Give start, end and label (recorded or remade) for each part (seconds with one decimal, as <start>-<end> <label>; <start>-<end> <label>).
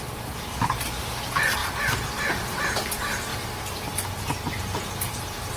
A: 0.0-5.6 recorded